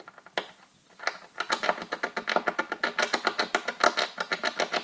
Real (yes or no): yes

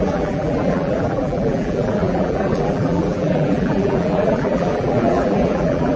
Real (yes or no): no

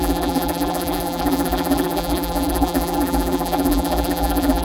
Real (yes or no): no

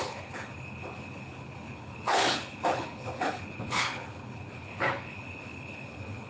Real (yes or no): no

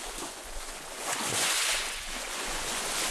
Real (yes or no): no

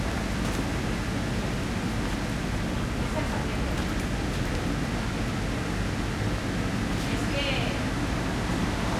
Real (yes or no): yes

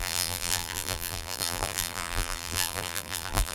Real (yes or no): no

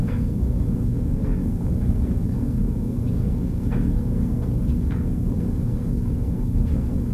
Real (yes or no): no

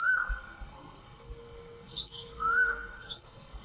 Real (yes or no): no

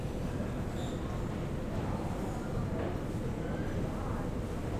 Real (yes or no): yes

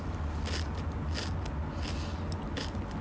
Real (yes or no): yes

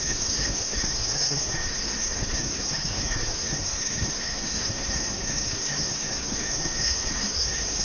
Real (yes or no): no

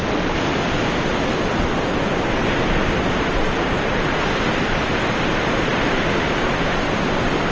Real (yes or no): yes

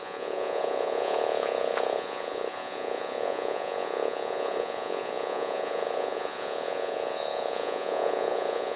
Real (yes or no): no